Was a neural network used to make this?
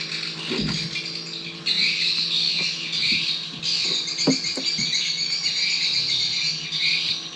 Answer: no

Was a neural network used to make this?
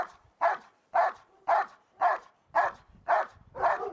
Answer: yes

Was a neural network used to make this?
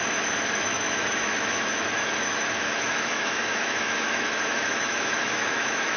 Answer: yes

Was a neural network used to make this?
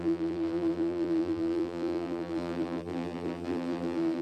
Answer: yes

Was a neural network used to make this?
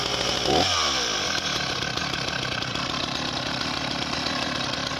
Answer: no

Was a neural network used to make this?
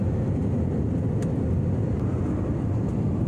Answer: no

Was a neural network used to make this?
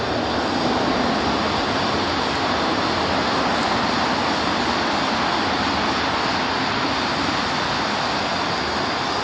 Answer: no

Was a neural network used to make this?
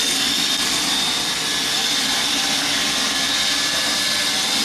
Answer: no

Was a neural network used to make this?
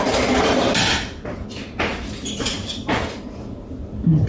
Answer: no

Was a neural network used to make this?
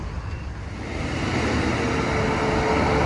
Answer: no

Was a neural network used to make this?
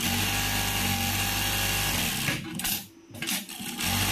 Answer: no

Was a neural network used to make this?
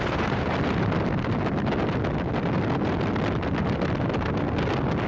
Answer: no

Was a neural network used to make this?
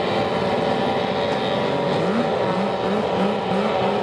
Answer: no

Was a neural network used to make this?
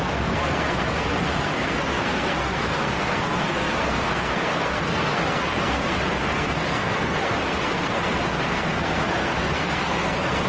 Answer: yes